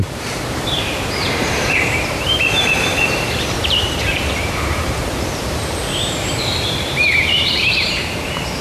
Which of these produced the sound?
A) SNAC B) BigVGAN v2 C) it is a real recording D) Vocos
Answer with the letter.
B